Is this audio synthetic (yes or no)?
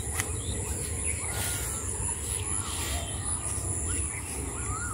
no